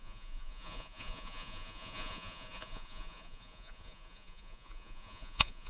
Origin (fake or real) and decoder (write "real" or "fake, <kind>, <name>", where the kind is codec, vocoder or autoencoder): fake, vocoder, Vocos